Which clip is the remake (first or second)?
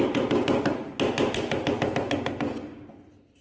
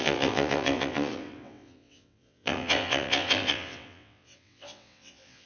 second